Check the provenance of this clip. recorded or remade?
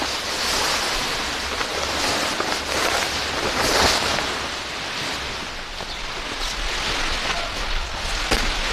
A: recorded